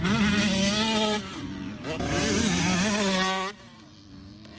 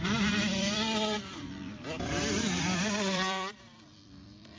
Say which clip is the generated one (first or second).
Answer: second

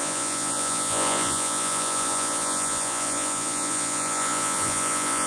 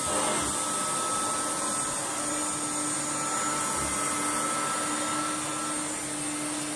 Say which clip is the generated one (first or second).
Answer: first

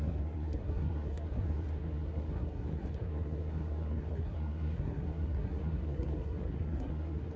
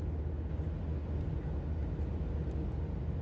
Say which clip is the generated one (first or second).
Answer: first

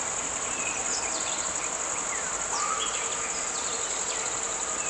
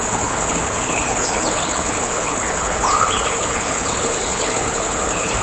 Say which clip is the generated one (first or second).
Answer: second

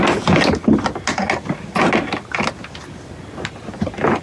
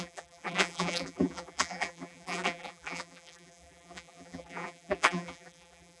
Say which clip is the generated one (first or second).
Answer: second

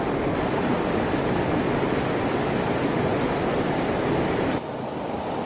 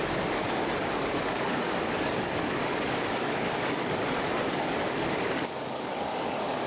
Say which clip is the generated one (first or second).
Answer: second